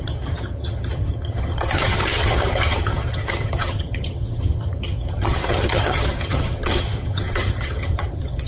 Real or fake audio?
fake